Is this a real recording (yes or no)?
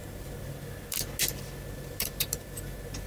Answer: yes